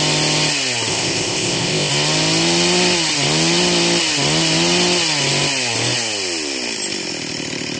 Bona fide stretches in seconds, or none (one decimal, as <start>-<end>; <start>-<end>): 0.0-0.9; 1.9-7.8